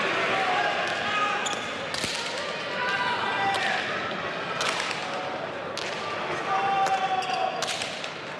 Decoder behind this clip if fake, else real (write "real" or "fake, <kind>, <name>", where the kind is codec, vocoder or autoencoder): real